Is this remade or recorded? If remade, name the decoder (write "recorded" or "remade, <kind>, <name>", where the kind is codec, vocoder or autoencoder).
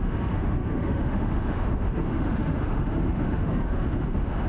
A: remade, autoencoder, DAC-VAE